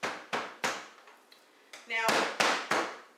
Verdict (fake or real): real